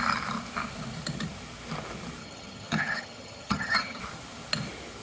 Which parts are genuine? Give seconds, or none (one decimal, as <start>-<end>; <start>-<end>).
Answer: 0.0-2.2; 4.0-5.0